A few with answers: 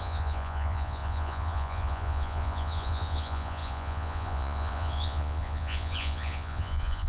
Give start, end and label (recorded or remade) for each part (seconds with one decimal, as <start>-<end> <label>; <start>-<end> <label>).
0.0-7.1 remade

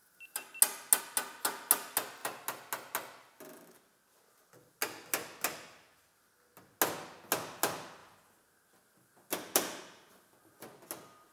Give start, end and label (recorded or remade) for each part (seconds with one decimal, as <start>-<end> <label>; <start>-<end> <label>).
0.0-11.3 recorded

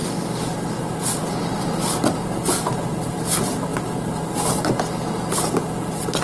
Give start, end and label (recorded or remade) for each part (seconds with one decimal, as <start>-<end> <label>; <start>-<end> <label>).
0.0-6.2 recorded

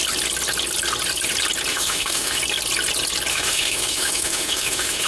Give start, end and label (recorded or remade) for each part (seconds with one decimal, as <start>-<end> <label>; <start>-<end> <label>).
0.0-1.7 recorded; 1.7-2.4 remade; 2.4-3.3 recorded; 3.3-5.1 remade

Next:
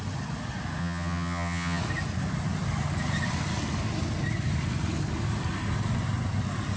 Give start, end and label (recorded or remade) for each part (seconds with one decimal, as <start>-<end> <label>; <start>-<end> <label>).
0.0-0.8 recorded; 0.8-1.8 remade; 1.8-6.8 recorded

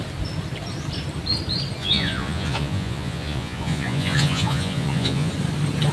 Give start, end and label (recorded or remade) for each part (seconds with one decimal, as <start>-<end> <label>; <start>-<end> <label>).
0.0-1.8 recorded; 1.8-5.3 remade; 5.3-5.9 recorded

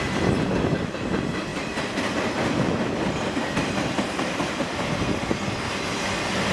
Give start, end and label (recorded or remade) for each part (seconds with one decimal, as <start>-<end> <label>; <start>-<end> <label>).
0.0-1.5 recorded; 1.5-4.7 remade; 4.7-6.5 recorded

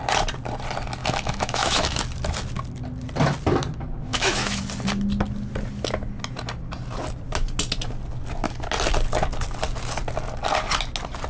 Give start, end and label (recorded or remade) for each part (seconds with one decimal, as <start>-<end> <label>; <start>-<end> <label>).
0.0-1.0 recorded; 1.0-2.0 remade; 2.0-4.1 recorded; 4.1-4.6 remade; 4.6-11.3 recorded